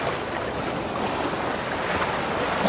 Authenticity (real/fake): real